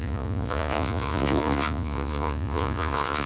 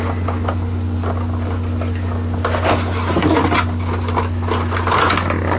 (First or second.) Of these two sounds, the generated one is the first